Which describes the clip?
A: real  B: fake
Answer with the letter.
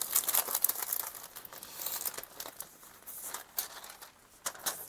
A